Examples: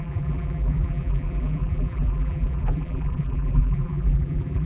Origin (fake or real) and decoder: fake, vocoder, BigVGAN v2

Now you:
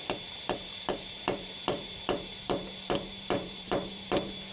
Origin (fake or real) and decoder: fake, vocoder, BigVGAN v2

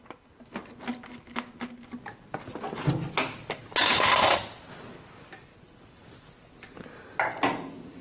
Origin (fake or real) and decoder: real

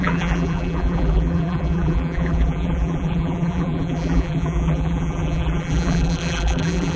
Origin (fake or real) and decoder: fake, vocoder, BigVGAN v2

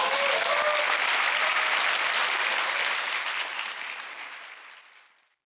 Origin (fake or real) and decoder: real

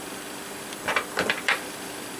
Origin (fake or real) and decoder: fake, vocoder, BigVGAN v2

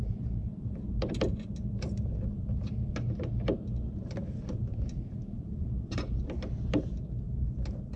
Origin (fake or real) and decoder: fake, vocoder, BigVGAN v2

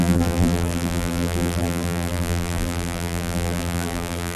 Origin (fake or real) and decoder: fake, vocoder, BigVGAN v2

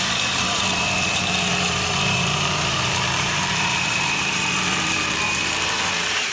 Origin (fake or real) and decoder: fake, vocoder, BigVGAN v2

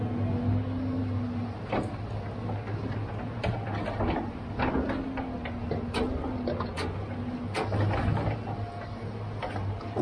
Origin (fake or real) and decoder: real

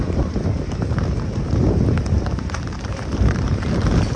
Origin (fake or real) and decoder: fake, vocoder, BigVGAN v2